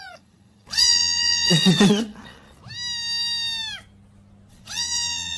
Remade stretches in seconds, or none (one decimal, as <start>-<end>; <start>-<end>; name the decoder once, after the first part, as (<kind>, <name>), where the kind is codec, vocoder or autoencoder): 0.0-2.6 (vocoder, Vocos); 4.5-5.4